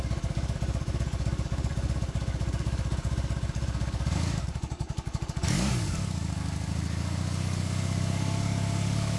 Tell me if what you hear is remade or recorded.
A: remade